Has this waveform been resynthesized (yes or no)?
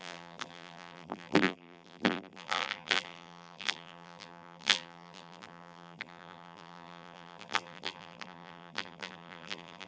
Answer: yes